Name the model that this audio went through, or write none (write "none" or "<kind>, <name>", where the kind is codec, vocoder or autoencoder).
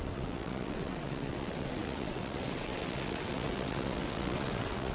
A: vocoder, WaveNeXt